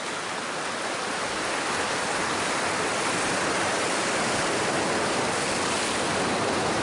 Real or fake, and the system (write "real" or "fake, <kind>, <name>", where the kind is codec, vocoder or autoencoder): real